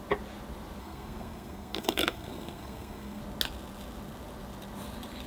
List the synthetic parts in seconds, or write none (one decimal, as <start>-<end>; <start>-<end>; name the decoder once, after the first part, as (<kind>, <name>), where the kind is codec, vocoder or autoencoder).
0.8-3.2 (codec, SNAC)